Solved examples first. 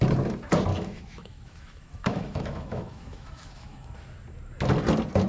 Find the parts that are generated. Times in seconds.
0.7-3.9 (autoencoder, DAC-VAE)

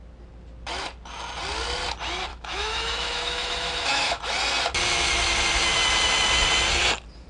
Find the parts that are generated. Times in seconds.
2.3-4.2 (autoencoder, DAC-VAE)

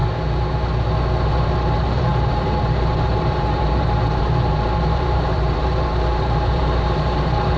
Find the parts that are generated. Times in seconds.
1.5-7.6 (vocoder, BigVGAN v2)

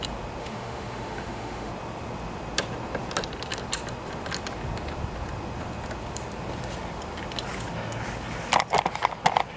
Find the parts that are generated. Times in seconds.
0.4-1.7 (autoencoder, DAC-VAE)

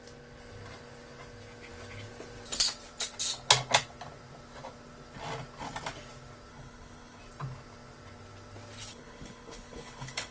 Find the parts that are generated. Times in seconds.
6.5-7.2 (codec, HILCodec); 8.9-10.3